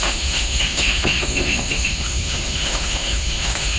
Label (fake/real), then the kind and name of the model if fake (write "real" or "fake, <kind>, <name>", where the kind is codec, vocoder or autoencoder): fake, autoencoder, DAC-VAE